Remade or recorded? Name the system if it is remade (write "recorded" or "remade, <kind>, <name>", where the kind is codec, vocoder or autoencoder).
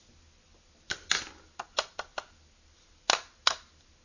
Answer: recorded